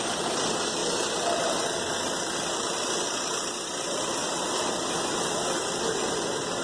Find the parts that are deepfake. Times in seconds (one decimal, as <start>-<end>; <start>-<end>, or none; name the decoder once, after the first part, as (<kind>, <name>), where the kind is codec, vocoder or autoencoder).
none